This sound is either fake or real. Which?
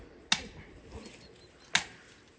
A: real